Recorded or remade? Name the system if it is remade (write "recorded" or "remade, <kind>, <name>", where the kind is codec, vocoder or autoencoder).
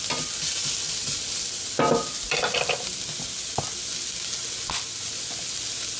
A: recorded